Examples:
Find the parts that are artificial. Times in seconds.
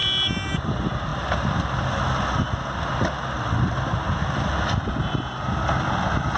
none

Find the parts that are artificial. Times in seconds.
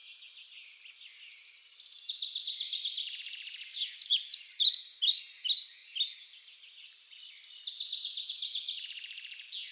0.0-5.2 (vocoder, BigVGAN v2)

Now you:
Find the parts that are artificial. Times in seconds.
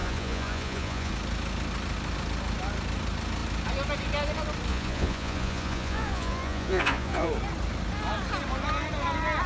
0.0-1.1 (vocoder, Vocos); 4.7-7.3